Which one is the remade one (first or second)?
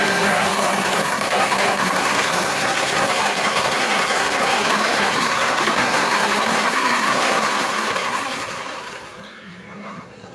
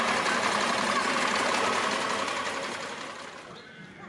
first